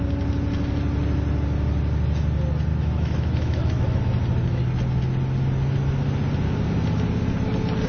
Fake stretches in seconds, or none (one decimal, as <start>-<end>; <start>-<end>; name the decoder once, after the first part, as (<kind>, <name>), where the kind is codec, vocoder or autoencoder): 2.7-4.0 (autoencoder, DAC-VAE)